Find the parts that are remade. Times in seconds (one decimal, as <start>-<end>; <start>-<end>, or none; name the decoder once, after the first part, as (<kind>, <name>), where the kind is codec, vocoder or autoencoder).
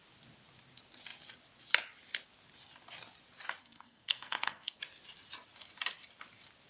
3.6-4.8 (codec, SNAC)